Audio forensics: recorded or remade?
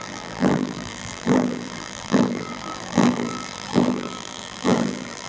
remade